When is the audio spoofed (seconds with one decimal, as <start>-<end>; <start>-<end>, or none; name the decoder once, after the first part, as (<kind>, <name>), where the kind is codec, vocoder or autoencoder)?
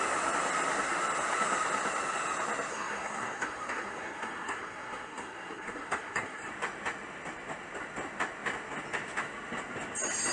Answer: 2.7-6.5 (codec, SNAC)